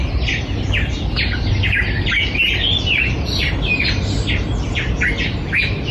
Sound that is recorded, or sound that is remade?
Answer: recorded